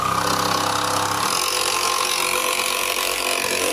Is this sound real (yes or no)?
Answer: yes